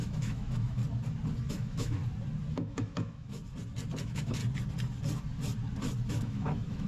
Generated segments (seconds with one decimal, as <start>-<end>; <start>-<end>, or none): 0.0-0.8; 1.5-2.0; 2.5-3.4; 4.0-4.4; 6.1-6.9